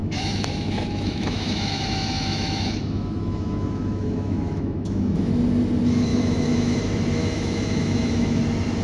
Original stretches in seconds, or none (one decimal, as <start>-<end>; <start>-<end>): 5.3-6.1; 6.8-7.2; 8.4-8.8